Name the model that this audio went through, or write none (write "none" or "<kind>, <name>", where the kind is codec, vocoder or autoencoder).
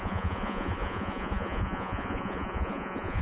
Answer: vocoder, Vocos